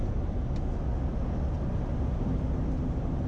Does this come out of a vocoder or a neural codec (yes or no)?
no